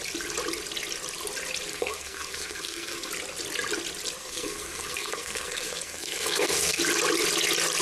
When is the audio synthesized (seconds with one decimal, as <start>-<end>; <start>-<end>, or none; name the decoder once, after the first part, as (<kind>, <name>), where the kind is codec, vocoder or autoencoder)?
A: 1.7-3.1 (codec, SNAC); 4.2-6.8